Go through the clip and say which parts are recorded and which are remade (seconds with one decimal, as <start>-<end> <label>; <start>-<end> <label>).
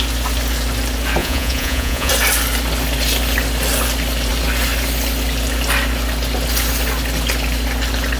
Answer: 0.0-1.2 recorded; 1.2-2.1 remade; 2.1-8.2 recorded